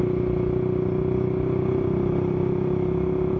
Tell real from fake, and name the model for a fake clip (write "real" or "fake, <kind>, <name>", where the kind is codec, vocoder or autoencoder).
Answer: real